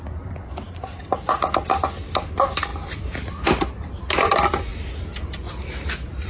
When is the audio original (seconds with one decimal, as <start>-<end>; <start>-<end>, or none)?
0.0-2.7; 3.9-4.7; 5.7-6.3